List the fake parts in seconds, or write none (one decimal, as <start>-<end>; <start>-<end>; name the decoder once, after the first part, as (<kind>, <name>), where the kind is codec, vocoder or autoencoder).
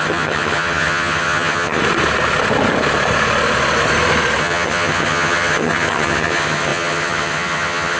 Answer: 0.0-1.8 (vocoder, HiFi-GAN); 4.4-8.0